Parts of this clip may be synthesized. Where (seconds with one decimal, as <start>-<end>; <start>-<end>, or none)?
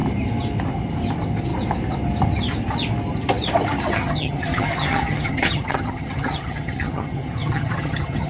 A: 3.9-8.3